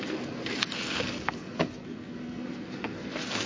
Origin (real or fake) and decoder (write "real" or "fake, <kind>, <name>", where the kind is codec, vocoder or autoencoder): fake, codec, SNAC